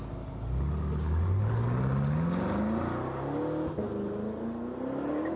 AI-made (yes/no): no